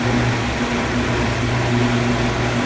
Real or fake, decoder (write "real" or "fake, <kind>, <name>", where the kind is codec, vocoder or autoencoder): real